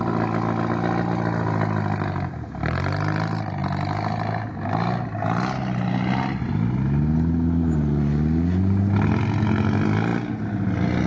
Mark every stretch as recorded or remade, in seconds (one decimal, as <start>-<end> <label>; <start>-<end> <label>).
0.0-11.1 recorded